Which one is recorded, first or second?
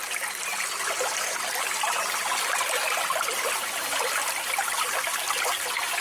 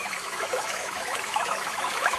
first